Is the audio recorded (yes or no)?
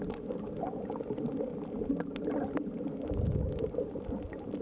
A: yes